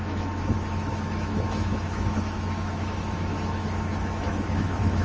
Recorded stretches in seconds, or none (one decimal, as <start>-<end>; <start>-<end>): none